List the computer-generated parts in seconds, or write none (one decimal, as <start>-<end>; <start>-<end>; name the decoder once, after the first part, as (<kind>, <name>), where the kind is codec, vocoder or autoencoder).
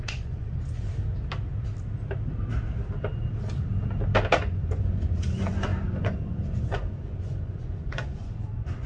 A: 0.0-0.9 (vocoder, Vocos); 4.4-8.9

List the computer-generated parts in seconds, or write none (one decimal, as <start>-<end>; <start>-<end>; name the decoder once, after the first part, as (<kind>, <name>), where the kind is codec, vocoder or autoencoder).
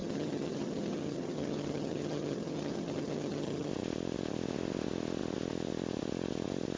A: 0.0-3.7 (vocoder, HiFi-GAN)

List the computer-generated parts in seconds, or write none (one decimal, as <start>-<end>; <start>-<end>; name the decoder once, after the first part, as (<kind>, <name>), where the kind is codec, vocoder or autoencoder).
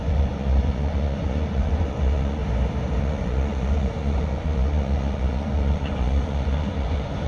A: 0.0-2.4 (vocoder, Vocos); 3.0-7.3